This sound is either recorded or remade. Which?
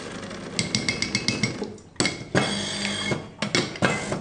recorded